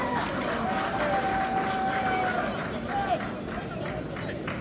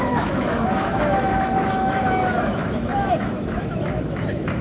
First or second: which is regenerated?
second